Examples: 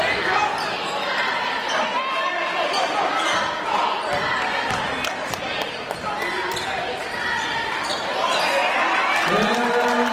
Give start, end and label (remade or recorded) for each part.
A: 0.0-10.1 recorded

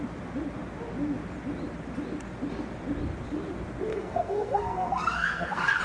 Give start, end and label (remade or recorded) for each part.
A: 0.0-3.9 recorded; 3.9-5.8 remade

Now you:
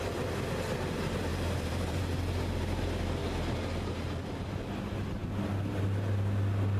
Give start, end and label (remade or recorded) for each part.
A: 0.0-1.3 recorded; 1.3-2.0 remade; 2.0-6.8 recorded

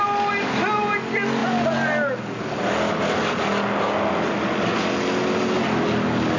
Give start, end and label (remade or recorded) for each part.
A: 0.0-6.4 recorded